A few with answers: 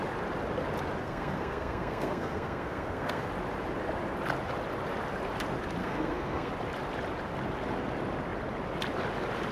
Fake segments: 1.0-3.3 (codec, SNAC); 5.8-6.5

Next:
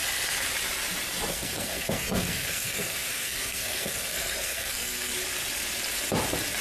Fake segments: 1.3-5.1 (codec, SNAC)

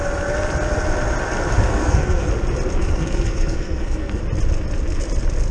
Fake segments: 1.7-2.3 (codec, SNAC); 2.8-4.2

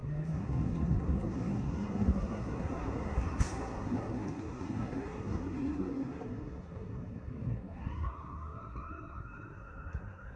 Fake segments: 0.0-10.4 (codec, SNAC)